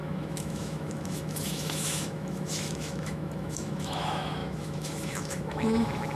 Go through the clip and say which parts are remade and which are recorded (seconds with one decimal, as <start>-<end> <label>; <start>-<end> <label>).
0.0-6.2 remade